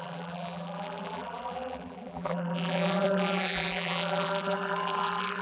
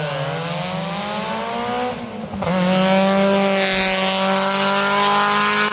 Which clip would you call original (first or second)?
second